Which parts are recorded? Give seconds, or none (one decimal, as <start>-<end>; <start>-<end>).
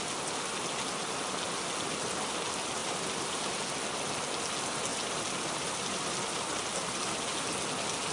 0.0-2.8; 3.5-4.9; 7.0-8.1